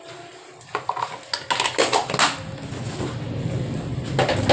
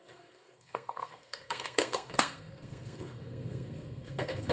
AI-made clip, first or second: second